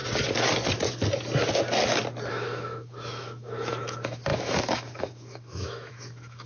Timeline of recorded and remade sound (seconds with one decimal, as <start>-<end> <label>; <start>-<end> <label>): 0.0-2.3 recorded; 2.3-6.5 remade